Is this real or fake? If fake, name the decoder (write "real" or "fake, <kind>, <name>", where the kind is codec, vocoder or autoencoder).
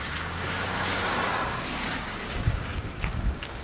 fake, codec, DAC